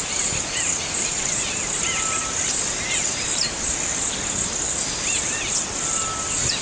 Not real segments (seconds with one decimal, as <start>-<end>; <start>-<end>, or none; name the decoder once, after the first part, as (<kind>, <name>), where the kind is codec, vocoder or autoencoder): none